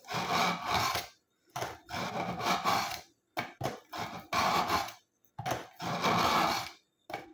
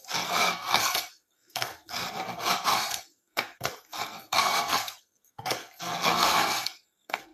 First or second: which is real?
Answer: first